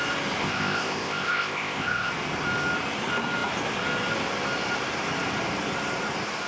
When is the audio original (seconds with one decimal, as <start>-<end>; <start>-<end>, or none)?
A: 0.0-0.4; 2.1-6.5